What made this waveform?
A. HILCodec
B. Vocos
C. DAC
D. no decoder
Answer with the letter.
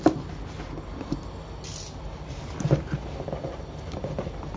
D